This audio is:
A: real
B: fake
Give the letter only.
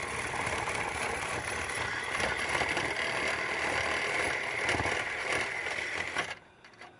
A